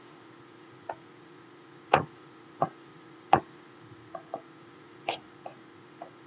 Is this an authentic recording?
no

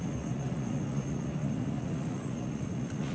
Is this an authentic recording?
no